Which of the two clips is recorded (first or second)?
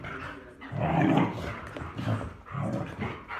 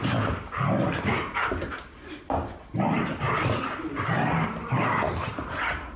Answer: first